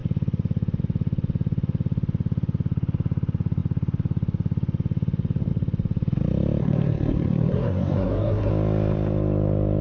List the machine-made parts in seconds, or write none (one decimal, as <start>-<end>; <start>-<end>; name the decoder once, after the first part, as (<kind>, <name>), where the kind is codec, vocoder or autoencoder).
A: 6.6-8.5 (codec, SNAC)